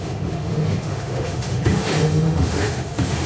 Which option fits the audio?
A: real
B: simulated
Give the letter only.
B